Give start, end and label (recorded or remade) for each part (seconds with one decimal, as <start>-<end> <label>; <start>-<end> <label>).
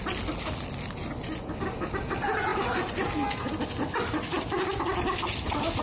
0.0-5.8 recorded